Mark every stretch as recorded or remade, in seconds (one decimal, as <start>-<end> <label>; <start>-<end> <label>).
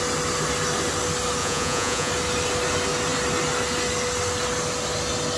0.0-1.4 recorded; 1.4-2.1 remade; 2.1-5.4 recorded